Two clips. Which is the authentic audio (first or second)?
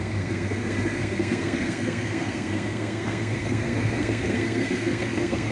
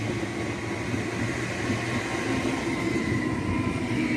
second